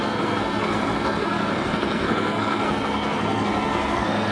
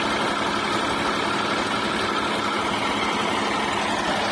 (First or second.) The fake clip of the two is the first